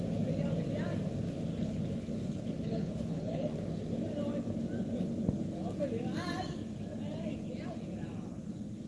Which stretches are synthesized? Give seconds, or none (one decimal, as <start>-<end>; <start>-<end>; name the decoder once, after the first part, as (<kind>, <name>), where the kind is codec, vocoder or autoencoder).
1.5-3.5 (codec, HILCodec)